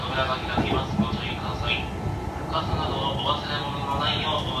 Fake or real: real